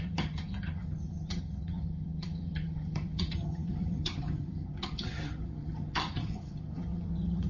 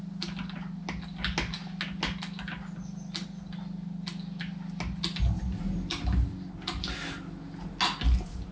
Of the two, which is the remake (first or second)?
first